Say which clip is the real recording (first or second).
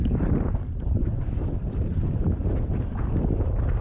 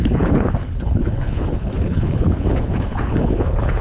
first